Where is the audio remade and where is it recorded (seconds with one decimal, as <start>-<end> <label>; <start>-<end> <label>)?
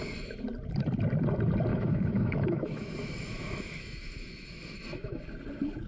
0.0-1.7 recorded; 1.7-5.2 remade; 5.2-5.9 recorded